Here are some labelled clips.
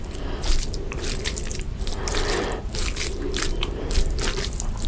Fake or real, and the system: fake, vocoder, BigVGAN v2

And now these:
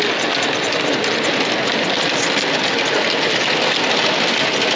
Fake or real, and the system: real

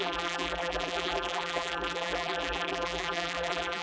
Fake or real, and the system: fake, vocoder, BigVGAN v2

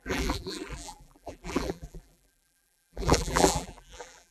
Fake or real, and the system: fake, vocoder, BigVGAN v2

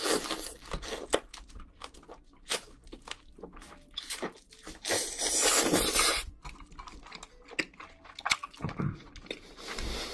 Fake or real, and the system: real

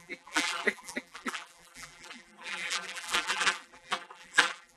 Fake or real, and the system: fake, vocoder, BigVGAN v2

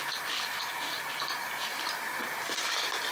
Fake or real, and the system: real